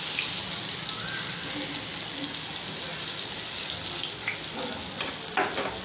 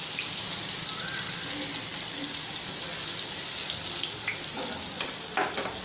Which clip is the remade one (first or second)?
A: second